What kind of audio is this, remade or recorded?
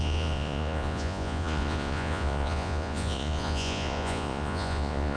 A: remade